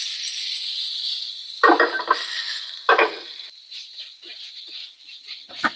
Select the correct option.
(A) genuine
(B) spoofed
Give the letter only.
A